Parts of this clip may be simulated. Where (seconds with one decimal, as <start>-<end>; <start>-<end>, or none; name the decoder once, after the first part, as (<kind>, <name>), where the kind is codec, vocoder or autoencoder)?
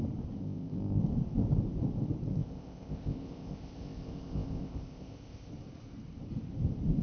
0.4-1.0 (codec, ZipCodec); 2.3-5.5